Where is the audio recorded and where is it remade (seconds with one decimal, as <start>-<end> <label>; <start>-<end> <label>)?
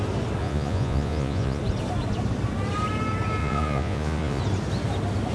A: 0.0-0.4 recorded; 0.4-1.6 remade; 1.6-3.4 recorded; 3.4-4.4 remade; 4.4-5.3 recorded